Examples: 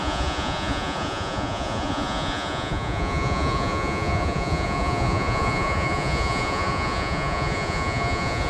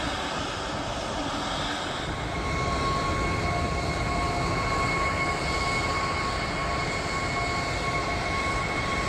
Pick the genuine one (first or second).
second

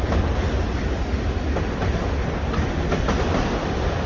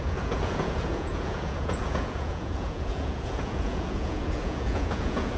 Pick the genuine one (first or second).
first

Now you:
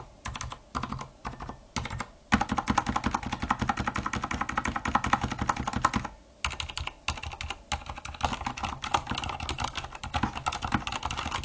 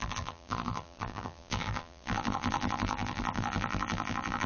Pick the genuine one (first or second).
first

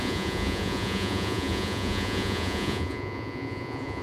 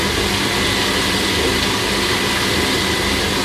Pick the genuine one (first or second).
second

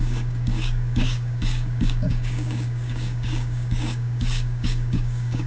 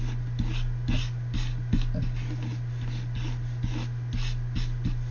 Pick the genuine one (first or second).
second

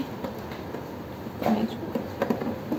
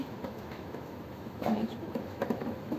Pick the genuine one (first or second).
first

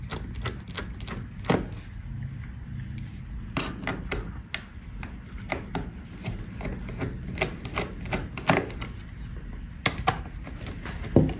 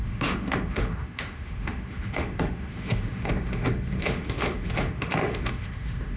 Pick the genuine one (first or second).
first